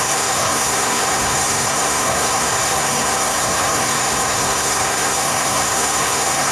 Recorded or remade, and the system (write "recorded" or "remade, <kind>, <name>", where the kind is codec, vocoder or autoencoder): remade, codec, SNAC